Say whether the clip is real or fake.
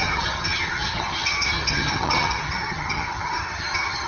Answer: fake